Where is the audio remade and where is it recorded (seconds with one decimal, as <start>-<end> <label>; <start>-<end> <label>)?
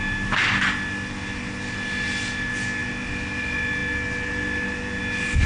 0.0-5.5 recorded